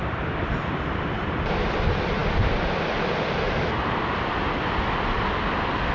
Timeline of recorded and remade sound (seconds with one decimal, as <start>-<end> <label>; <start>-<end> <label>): 0.0-0.9 remade; 0.9-5.9 recorded